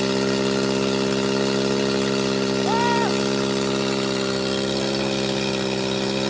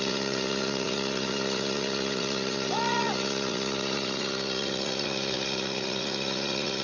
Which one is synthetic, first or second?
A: second